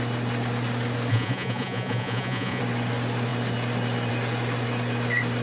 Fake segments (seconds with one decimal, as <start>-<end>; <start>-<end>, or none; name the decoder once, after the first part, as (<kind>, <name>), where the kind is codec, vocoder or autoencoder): 1.1-2.6 (vocoder, Vocos)